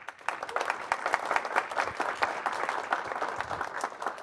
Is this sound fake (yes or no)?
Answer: no